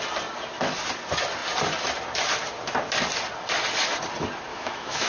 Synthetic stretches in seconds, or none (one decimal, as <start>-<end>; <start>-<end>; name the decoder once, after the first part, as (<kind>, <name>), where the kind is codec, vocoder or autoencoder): 4.5-5.1 (autoencoder, DAC-VAE)

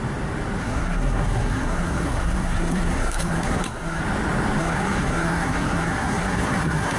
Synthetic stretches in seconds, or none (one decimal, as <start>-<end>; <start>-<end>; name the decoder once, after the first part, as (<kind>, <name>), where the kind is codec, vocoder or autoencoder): 0.6-4.0 (codec, SNAC); 4.6-7.0

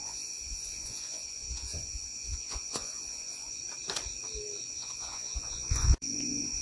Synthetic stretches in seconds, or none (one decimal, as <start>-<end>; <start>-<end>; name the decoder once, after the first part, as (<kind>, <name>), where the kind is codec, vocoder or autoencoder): 0.0-3.6 (vocoder, Vocos); 4.7-6.6

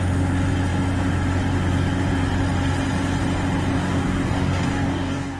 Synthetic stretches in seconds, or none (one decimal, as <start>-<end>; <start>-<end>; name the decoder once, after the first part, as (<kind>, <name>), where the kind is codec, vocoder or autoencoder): 3.8-5.4 (codec, DAC)